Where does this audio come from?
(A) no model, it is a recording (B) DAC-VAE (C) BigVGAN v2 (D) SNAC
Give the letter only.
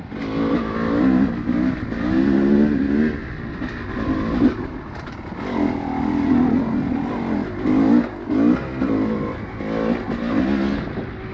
A